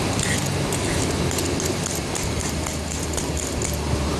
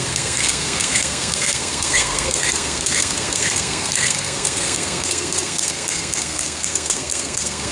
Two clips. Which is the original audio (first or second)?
first